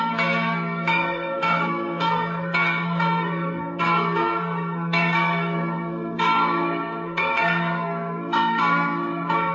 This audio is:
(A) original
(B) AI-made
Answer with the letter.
B